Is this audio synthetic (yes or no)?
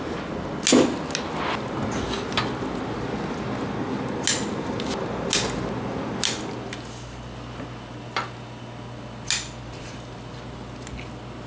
no